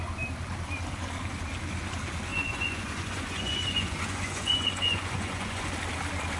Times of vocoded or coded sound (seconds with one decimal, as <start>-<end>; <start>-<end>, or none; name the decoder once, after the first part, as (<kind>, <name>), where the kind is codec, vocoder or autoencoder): 2.3-5.7 (vocoder, Vocos)